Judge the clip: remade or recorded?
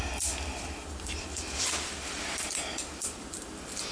remade